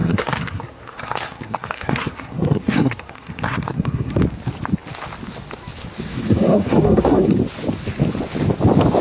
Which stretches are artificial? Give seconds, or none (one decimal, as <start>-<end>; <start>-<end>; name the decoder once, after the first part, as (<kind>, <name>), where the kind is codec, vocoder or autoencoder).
0.0-4.1 (codec, SNAC); 6.1-7.3